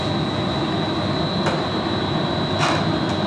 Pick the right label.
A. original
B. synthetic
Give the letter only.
B